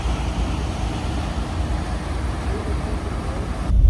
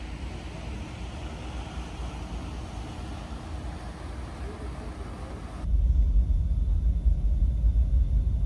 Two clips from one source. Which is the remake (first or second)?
first